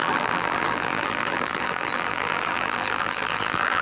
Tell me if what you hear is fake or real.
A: fake